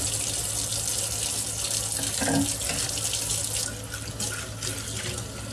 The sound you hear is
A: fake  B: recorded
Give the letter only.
B